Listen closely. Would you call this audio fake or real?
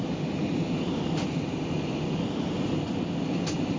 real